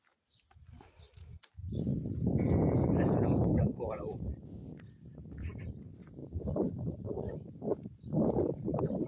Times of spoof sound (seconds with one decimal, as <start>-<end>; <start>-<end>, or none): 1.9-4.2